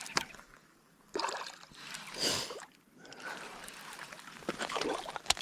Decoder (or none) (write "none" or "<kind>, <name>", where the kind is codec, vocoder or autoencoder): vocoder, BigVGAN v2